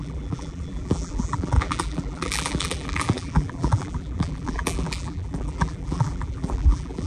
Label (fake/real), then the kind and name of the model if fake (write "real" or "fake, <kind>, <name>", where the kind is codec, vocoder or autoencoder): fake, vocoder, BigVGAN v2